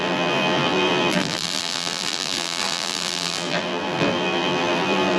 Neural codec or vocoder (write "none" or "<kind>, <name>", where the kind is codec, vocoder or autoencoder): vocoder, BigVGAN v2